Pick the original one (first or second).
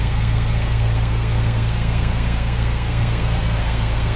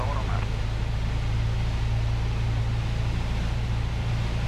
second